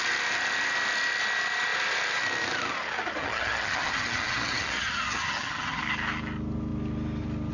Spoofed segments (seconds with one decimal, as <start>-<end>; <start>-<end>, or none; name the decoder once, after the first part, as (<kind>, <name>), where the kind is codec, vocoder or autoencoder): 3.2-5.8 (vocoder, HiFi-GAN)